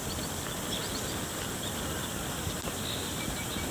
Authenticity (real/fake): real